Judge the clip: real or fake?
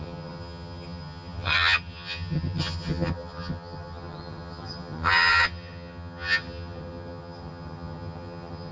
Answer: fake